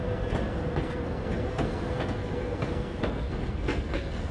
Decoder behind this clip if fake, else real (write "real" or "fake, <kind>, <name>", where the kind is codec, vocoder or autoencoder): fake, codec, SNAC